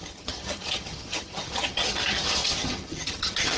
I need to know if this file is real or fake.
fake